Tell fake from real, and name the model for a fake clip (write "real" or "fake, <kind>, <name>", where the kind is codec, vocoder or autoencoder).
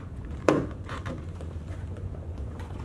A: fake, vocoder, Vocos